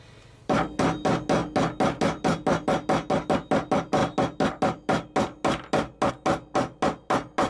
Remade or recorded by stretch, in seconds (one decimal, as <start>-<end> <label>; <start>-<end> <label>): 0.0-7.5 recorded